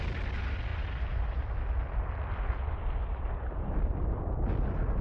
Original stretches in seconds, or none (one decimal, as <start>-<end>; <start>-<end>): 0.0-5.0